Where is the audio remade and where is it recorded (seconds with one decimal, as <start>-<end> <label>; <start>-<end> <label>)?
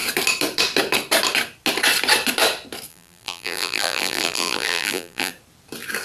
0.0-2.9 recorded; 2.9-5.3 remade; 5.3-6.0 recorded